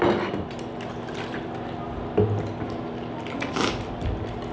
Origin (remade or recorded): recorded